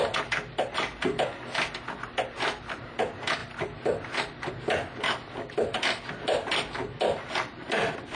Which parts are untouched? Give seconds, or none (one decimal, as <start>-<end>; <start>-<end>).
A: 0.0-8.1

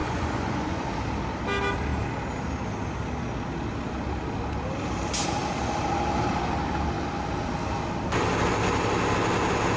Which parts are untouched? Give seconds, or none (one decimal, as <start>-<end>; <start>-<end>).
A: 0.9-9.8

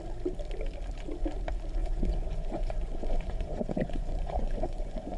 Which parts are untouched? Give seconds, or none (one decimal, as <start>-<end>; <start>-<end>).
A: 0.0-1.8

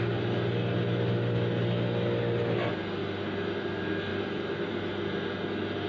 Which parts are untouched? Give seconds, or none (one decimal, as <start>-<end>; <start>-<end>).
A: 0.0-5.9

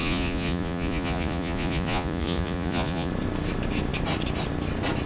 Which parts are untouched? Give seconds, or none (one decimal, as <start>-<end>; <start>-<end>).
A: 3.1-5.1